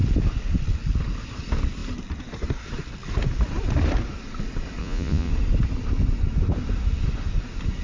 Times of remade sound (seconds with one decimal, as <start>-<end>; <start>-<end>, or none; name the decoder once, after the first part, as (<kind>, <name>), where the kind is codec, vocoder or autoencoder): 4.8-5.3 (vocoder, Vocos)